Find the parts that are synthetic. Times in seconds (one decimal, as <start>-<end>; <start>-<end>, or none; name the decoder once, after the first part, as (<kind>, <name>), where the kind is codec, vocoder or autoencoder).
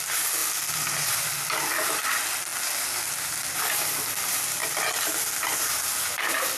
none